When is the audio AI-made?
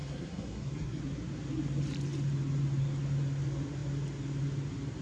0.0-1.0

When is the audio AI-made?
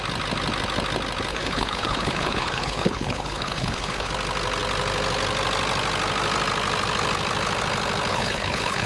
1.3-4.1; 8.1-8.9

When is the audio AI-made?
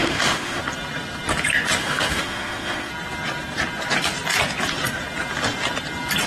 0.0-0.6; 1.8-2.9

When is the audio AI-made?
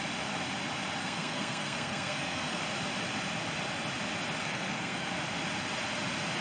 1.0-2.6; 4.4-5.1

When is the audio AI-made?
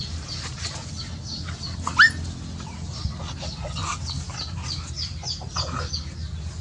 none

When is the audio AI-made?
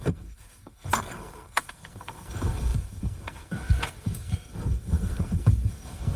0.0-6.2